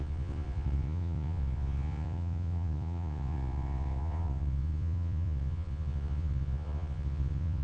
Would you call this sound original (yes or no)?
no